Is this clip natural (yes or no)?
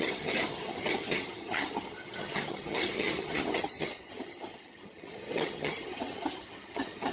no